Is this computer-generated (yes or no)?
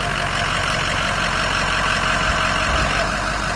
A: no